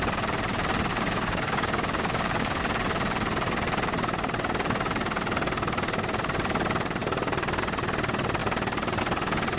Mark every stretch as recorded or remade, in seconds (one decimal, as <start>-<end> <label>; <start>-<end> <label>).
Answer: 0.0-0.9 recorded; 0.9-2.6 remade; 2.6-9.6 recorded